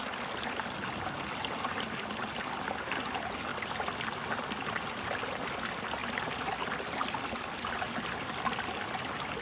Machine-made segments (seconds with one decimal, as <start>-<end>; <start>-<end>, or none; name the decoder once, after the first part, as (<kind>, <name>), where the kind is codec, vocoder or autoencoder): none